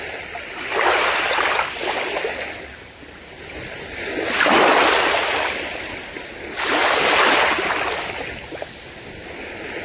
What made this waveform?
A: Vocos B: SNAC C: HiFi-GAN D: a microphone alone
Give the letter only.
D